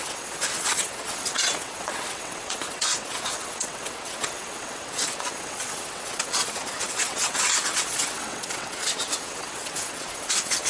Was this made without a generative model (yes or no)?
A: no